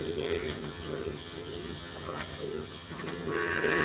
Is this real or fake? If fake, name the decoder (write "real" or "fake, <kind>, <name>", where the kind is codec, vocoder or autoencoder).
fake, vocoder, HiFi-GAN